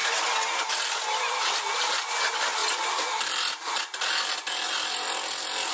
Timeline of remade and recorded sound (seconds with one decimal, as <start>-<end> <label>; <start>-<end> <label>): 0.0-5.7 recorded